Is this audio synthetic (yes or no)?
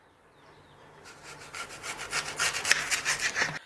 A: no